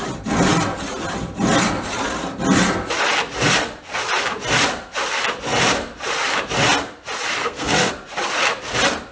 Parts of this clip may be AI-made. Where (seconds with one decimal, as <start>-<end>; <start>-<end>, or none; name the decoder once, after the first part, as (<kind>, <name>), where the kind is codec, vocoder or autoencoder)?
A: 7.4-7.9 (codec, SNAC)